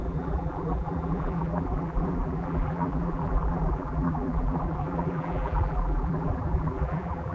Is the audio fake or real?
fake